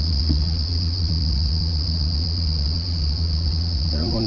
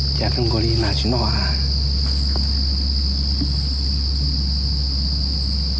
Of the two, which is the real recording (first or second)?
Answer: second